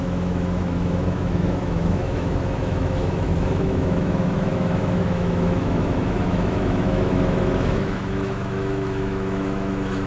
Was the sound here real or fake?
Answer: fake